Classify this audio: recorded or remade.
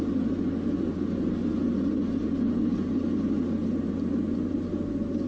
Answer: recorded